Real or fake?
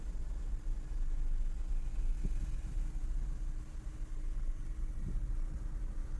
real